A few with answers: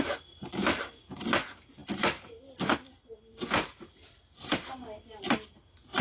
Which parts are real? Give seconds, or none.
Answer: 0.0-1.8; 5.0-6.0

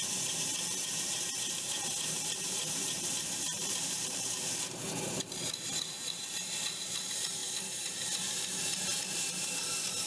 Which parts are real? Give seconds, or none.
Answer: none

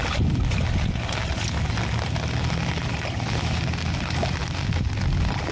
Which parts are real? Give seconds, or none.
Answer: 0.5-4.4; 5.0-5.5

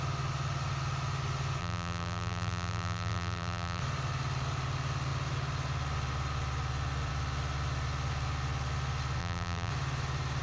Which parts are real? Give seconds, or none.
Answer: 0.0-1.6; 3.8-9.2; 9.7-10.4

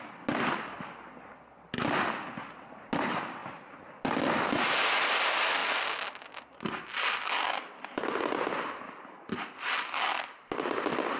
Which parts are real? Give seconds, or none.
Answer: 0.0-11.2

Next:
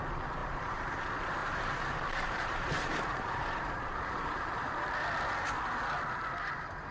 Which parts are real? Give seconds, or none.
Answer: 0.0-0.4; 0.9-1.4; 4.7-6.9

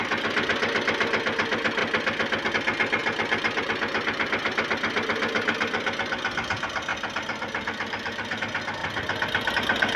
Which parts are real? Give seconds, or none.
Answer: 0.0-3.0; 3.6-6.9; 8.4-10.0